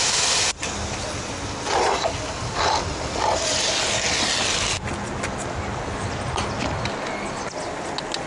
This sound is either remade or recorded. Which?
recorded